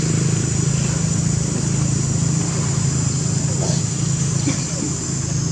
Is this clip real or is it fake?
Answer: real